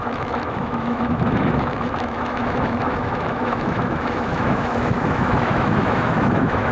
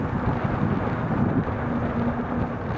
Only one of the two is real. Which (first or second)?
second